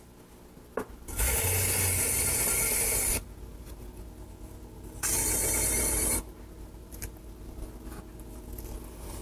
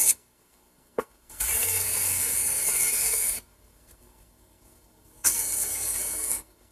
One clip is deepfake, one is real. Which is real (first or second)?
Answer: first